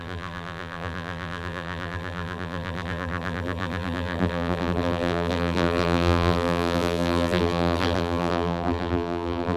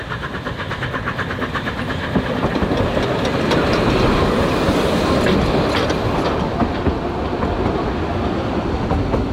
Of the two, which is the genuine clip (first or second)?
second